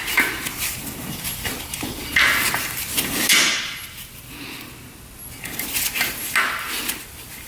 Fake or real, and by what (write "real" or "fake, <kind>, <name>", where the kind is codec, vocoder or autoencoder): real